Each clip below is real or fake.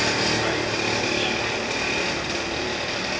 real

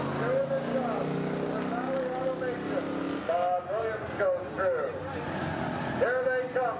real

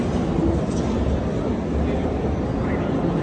fake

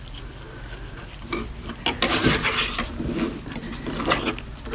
real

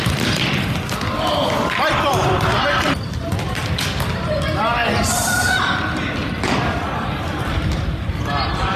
fake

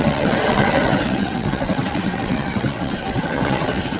fake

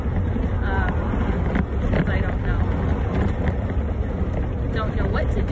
real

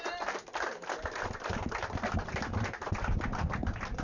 real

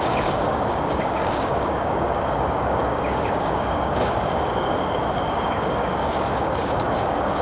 fake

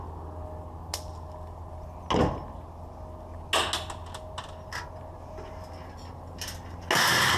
real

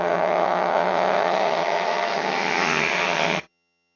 fake